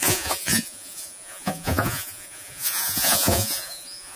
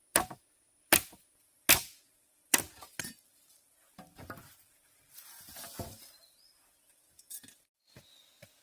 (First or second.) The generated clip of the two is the first